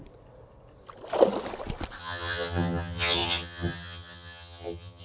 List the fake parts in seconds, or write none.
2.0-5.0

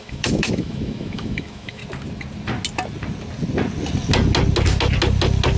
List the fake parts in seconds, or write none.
0.0-1.8

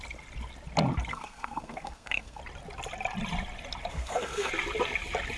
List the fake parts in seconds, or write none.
1.1-2.4; 3.9-4.5

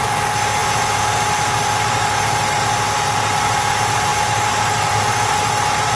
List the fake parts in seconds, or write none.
none

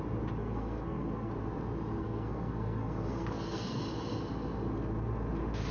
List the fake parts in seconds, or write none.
0.4-1.3; 2.0-3.8